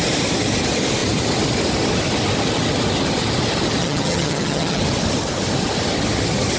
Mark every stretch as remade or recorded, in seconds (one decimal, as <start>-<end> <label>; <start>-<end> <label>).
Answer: 0.0-3.8 recorded; 3.8-4.8 remade; 4.8-6.6 recorded